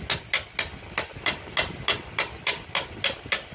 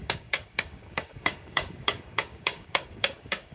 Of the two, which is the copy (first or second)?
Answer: second